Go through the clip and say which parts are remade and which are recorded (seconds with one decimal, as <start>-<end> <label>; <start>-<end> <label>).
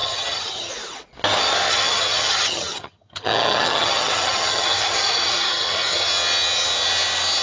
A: 0.0-0.7 remade; 0.7-1.7 recorded; 1.7-6.1 remade; 6.1-7.4 recorded